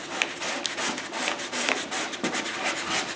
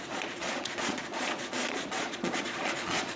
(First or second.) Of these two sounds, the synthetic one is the second